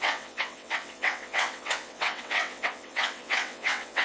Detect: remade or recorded remade